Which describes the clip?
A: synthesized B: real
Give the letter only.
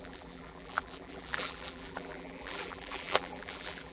A